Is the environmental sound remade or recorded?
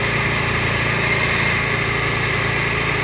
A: recorded